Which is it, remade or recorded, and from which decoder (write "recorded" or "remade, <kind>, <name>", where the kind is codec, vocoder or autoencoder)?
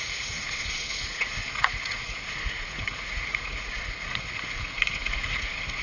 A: remade, vocoder, Vocos